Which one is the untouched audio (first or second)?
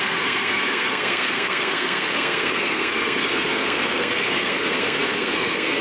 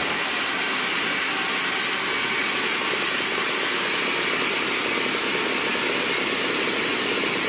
second